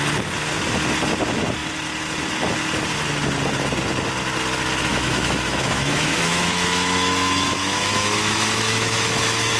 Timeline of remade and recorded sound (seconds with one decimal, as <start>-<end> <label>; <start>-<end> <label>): 0.0-4.9 recorded; 4.9-9.6 remade